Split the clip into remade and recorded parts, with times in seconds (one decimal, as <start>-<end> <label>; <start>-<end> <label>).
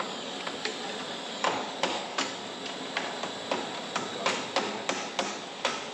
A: 0.0-0.7 remade; 0.7-1.3 recorded; 1.3-2.4 remade; 2.4-5.1 recorded; 5.1-5.9 remade